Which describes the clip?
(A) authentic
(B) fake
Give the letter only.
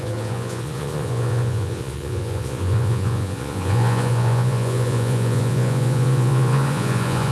B